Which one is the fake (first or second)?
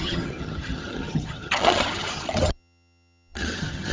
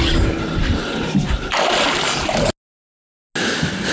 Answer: first